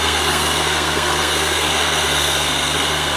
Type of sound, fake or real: fake